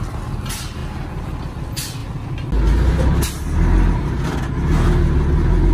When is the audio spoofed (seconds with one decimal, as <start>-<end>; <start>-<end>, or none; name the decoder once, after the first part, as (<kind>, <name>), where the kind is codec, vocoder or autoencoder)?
none